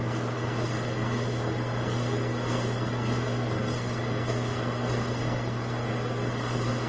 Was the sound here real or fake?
fake